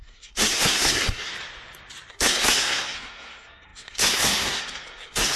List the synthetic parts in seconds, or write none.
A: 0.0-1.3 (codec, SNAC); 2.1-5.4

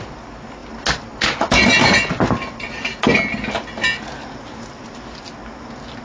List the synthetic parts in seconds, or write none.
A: none

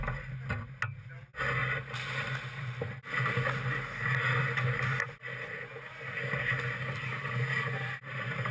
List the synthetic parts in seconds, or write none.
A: none

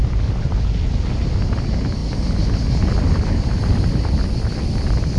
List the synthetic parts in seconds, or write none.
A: none

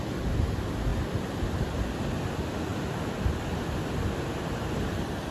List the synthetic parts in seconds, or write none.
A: none

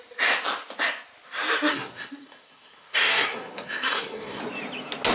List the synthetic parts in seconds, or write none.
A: 1.7-4.4 (codec, SNAC)